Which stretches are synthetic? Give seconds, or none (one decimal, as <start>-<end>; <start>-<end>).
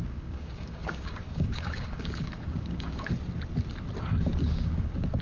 0.0-3.1; 4.4-5.2